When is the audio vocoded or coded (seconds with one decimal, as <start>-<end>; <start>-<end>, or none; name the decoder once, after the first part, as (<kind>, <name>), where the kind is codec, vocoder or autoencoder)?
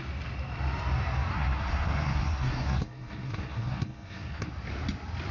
1.3-4.5 (codec, SNAC)